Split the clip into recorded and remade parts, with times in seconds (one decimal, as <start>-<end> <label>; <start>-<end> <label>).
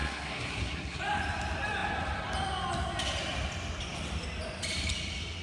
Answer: 0.0-1.0 remade; 1.0-5.4 recorded